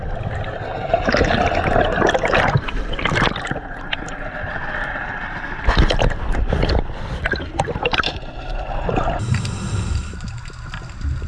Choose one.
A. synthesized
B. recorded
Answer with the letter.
B